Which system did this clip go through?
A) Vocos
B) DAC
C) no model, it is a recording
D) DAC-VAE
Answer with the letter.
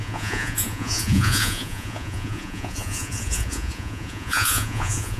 A